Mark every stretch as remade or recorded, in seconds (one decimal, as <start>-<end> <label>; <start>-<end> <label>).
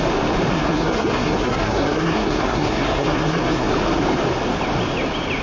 0.0-0.5 recorded; 0.5-3.7 remade; 3.7-5.4 recorded